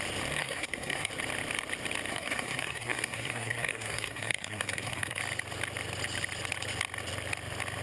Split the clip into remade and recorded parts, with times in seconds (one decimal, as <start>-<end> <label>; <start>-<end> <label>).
0.0-0.4 recorded; 0.4-1.1 remade; 1.1-2.1 recorded; 2.1-5.2 remade; 5.2-7.8 recorded